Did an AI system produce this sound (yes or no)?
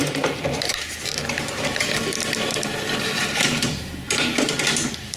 yes